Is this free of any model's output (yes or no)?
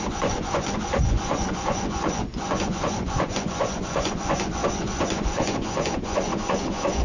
no